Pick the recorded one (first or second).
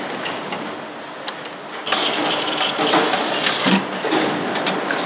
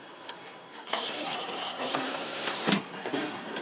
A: first